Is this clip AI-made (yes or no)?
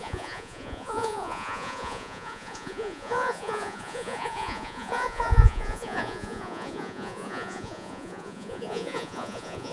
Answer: yes